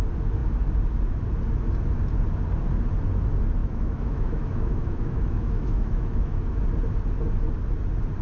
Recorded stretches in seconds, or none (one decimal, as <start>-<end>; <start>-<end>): 0.0-3.6; 6.6-8.2